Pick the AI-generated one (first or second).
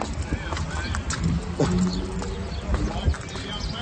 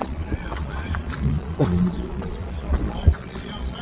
second